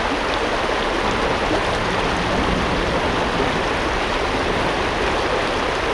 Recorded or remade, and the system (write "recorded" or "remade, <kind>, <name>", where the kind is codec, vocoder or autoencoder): recorded